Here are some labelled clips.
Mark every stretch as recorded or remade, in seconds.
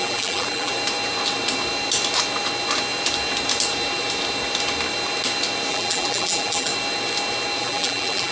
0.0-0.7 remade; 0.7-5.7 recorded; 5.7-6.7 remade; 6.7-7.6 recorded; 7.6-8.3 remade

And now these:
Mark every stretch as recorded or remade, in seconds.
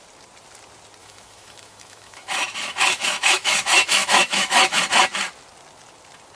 0.0-1.0 recorded; 1.0-4.8 remade; 4.8-6.4 recorded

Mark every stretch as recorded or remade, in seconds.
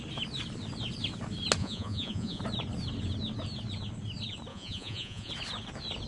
0.0-1.6 recorded; 1.6-2.4 remade; 2.4-4.5 recorded; 4.5-5.3 remade; 5.3-6.1 recorded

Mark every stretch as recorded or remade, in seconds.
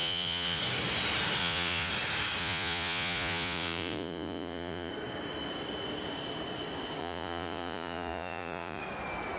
0.0-0.6 remade; 0.6-1.4 recorded; 1.4-1.9 remade; 1.9-2.4 recorded; 2.4-4.9 remade; 4.9-7.0 recorded; 7.0-8.8 remade; 8.8-9.4 recorded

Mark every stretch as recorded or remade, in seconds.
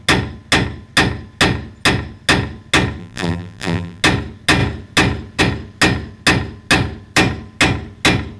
0.0-3.0 recorded; 3.0-4.0 remade; 4.0-8.4 recorded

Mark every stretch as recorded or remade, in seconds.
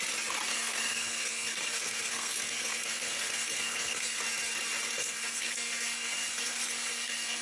0.0-0.5 recorded; 0.5-4.2 remade; 4.2-5.0 recorded; 5.0-7.4 remade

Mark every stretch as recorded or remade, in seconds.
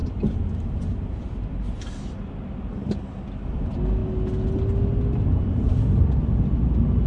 0.0-1.8 remade; 1.8-7.1 recorded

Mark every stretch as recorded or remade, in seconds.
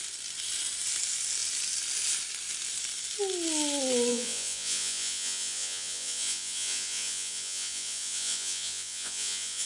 0.0-4.1 recorded; 4.1-9.7 remade